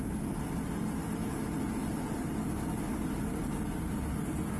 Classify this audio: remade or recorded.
recorded